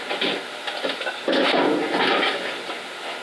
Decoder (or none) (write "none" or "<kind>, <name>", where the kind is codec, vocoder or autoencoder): none